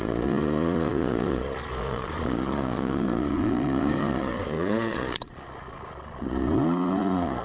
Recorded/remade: remade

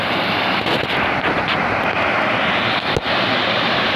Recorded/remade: recorded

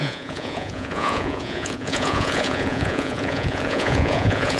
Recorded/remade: remade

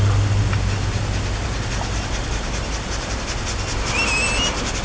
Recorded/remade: recorded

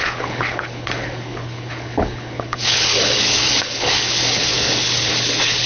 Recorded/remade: remade